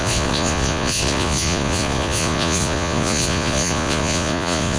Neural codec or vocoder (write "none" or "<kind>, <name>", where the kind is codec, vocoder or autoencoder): vocoder, Vocos